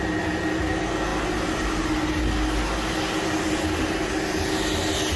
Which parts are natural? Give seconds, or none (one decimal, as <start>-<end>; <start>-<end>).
0.0-5.2